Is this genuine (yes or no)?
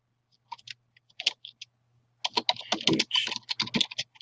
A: yes